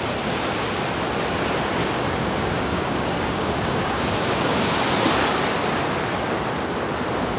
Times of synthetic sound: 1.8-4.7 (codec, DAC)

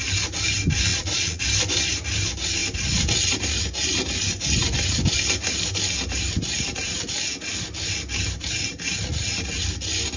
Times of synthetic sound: 0.9-1.4 (vocoder, Vocos)

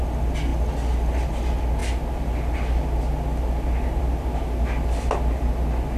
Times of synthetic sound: none

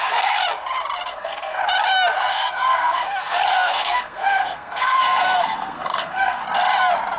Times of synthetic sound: 0.0-0.4 (codec, SNAC); 1.1-1.6; 2.3-6.4

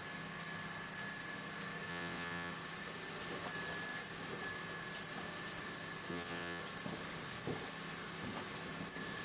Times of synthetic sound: 1.9-2.5 (vocoder, WaveNeXt); 6.1-6.6